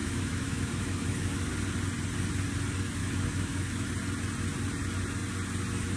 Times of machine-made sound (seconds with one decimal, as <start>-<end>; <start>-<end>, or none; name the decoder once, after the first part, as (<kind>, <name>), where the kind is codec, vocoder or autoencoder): 0.0-1.5 (autoencoder, DAC-VAE); 3.0-3.9